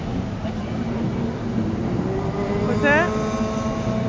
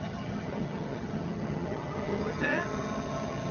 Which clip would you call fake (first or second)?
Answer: second